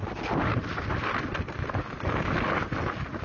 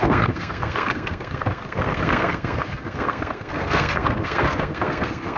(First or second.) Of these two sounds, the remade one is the second